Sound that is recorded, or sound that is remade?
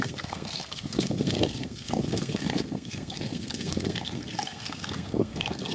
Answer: remade